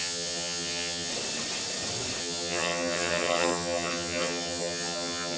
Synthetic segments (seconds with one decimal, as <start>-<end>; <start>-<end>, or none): 0.0-1.1; 2.2-5.4